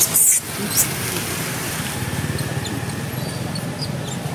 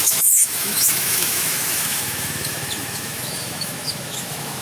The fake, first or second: second